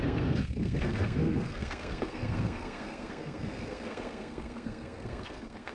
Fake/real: fake